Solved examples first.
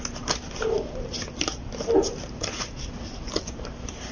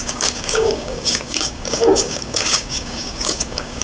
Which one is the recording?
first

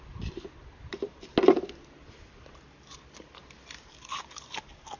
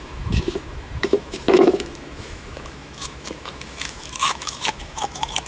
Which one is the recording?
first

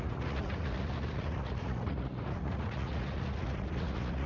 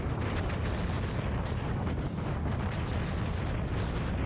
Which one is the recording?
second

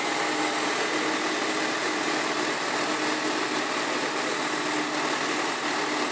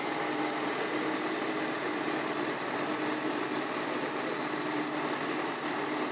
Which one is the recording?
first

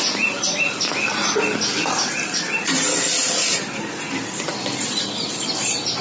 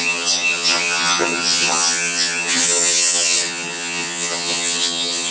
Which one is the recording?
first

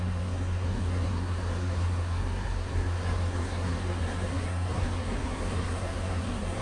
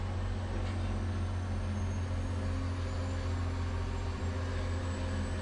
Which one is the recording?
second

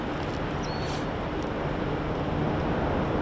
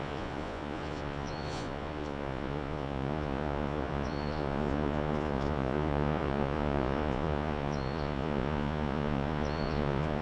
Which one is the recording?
first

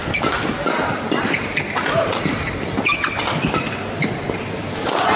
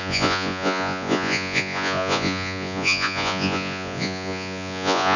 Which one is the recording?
first